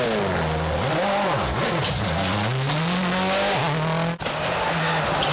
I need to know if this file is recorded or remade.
recorded